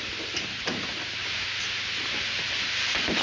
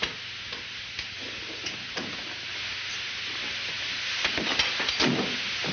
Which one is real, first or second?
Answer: second